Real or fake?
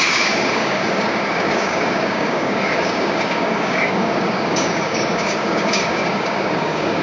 fake